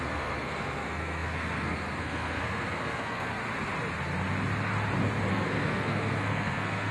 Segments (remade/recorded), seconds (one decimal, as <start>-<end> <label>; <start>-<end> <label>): 0.0-3.4 remade; 3.4-5.3 recorded; 5.3-6.9 remade